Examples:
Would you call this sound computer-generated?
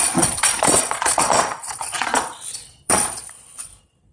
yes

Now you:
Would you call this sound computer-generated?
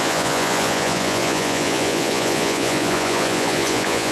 yes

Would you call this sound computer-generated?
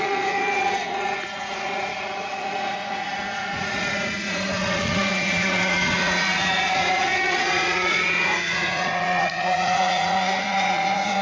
yes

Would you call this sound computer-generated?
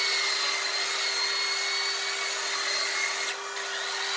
no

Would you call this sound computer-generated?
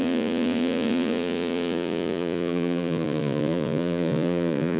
yes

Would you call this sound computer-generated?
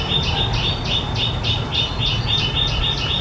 no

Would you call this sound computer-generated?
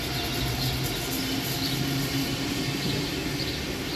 no